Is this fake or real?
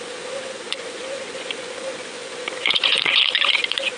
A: fake